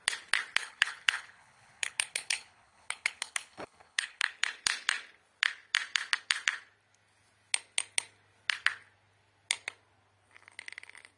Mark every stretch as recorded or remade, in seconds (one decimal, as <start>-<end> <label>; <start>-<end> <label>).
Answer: 0.0-0.6 recorded; 0.6-4.3 remade; 4.3-11.2 recorded